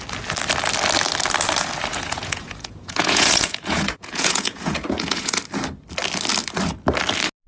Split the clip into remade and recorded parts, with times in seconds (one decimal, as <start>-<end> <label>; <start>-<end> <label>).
0.0-1.9 recorded; 1.9-5.4 remade; 5.4-7.5 recorded